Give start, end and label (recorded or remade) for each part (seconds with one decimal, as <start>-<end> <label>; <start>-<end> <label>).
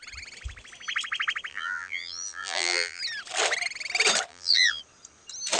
0.0-1.5 recorded; 1.5-3.0 remade; 3.0-4.3 recorded; 4.3-4.8 remade; 4.8-5.6 recorded